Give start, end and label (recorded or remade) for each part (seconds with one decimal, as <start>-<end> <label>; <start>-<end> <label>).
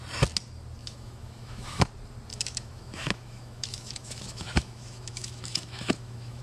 0.0-0.8 recorded; 0.8-1.9 remade; 1.9-2.3 recorded; 2.3-6.4 remade